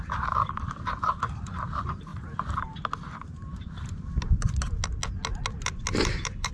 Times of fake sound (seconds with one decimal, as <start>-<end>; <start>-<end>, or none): 0.0-2.1; 6.0-6.5